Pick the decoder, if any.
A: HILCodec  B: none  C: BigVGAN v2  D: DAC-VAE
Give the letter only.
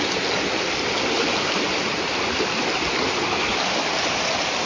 B